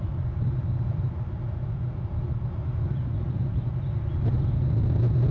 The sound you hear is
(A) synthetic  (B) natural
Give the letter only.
B